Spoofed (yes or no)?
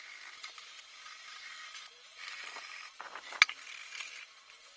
no